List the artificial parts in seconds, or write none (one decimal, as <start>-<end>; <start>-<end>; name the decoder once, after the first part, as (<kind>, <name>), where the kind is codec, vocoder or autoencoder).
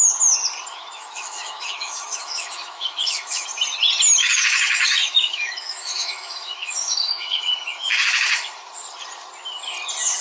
0.7-3.5 (autoencoder, DAC-VAE); 4.2-8.5